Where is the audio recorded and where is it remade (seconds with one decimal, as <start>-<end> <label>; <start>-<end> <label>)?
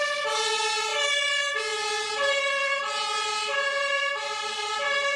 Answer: 0.0-5.2 recorded